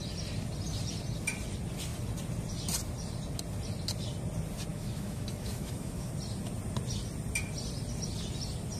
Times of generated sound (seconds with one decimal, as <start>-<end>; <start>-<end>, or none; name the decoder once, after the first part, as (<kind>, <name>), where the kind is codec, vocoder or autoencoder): 4.7-6.1 (autoencoder, DAC-VAE)